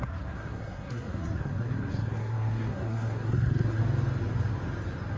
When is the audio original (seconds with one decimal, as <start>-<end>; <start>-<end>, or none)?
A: 3.8-5.2